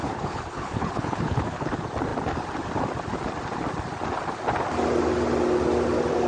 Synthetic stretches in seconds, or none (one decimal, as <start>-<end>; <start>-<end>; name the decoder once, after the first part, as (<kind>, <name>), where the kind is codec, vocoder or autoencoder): 0.0-1.7 (codec, HILCodec)